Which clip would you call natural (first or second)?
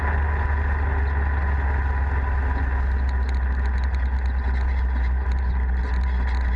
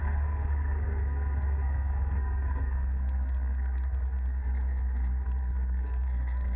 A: first